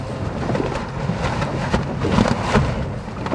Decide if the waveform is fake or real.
real